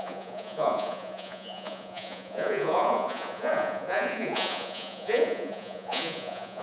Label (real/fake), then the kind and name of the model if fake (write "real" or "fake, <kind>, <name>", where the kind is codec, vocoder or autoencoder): fake, vocoder, Vocos